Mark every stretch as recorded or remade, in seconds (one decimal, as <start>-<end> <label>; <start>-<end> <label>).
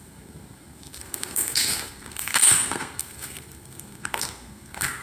0.0-5.0 remade